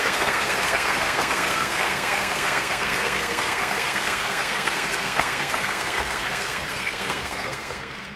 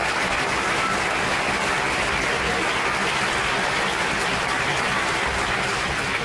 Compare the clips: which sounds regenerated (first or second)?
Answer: first